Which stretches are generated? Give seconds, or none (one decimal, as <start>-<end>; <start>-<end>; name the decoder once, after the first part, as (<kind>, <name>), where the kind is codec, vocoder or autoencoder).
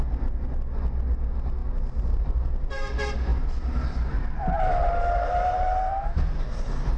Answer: none